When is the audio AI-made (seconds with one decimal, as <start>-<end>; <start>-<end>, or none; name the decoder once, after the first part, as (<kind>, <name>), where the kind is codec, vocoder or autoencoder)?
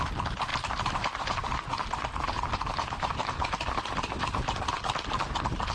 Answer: 0.5-3.9 (vocoder, BigVGAN v2)